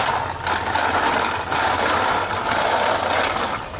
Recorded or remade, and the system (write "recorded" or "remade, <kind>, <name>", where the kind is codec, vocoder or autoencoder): recorded